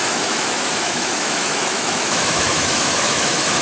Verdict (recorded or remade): remade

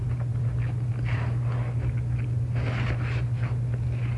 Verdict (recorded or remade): recorded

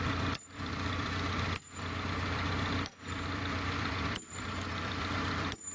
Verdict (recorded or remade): remade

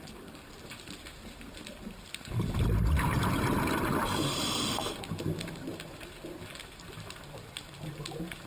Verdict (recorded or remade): recorded